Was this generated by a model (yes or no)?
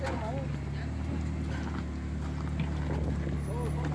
no